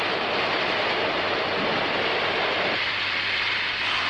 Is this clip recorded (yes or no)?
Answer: no